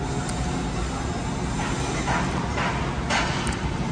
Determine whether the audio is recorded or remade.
recorded